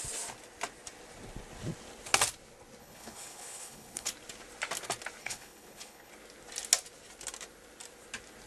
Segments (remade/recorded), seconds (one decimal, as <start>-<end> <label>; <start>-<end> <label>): 0.0-2.8 recorded; 2.8-4.1 remade; 4.1-5.2 recorded; 5.2-6.1 remade; 6.1-8.5 recorded